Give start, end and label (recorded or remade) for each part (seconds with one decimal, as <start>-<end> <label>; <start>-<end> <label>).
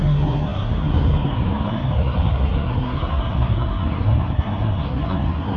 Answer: 0.0-5.6 remade